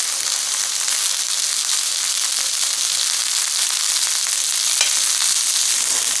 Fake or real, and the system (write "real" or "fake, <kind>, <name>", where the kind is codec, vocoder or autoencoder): real